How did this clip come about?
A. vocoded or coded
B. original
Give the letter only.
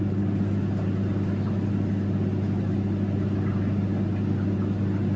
B